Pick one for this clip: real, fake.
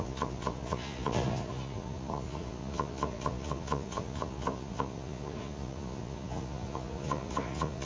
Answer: fake